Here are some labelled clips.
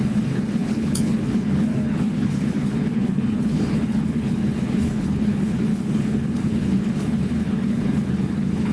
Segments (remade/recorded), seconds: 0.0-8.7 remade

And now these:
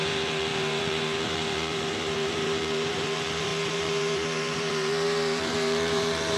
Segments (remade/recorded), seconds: 0.0-6.4 remade

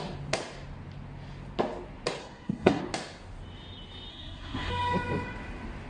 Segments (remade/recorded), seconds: 0.0-2.2 recorded; 2.2-2.8 remade; 2.8-4.1 recorded; 4.1-4.7 remade; 4.7-5.9 recorded

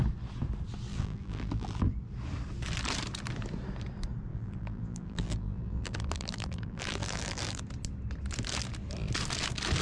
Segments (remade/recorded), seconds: 0.0-0.9 recorded; 0.9-1.9 remade; 1.9-4.3 recorded; 4.3-7.6 remade; 7.6-9.8 recorded

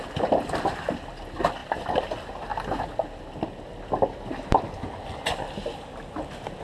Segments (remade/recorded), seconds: 0.0-6.6 recorded

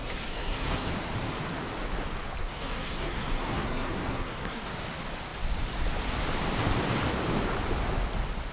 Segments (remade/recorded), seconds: 0.0-0.9 remade; 0.9-2.4 recorded; 2.4-4.7 remade; 4.7-8.5 recorded